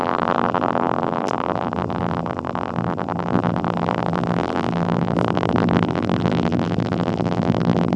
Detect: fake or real fake